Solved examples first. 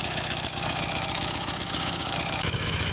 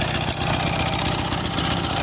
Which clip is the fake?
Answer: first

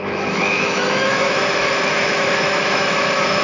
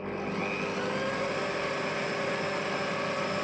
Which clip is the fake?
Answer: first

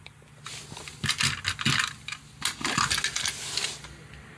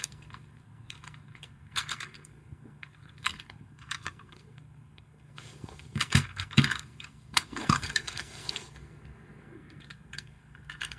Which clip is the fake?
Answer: second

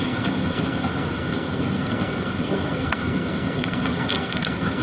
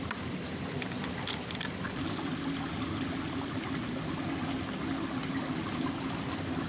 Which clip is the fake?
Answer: first